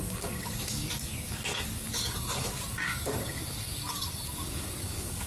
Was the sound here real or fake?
fake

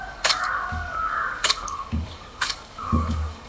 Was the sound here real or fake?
fake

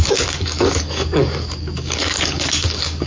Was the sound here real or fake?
fake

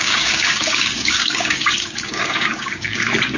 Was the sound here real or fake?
fake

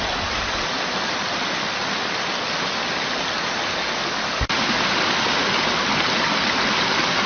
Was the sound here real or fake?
real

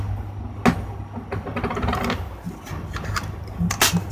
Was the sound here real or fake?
real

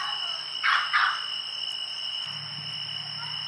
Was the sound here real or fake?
real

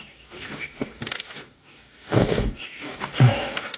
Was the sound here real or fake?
fake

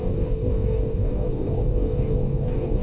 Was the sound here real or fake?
fake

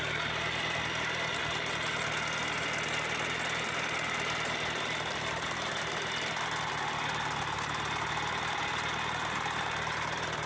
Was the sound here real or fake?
real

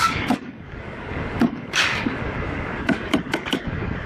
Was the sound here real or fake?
fake